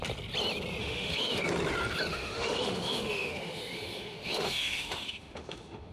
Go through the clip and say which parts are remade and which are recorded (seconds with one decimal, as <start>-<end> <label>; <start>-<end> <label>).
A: 0.0-0.8 recorded; 0.8-1.4 remade; 1.4-2.1 recorded; 2.1-5.9 remade